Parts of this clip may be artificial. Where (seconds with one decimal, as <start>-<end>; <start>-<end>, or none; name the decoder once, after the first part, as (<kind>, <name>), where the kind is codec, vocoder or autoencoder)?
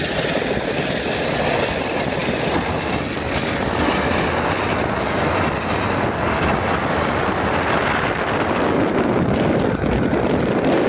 none